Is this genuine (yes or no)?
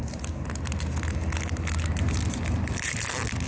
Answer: yes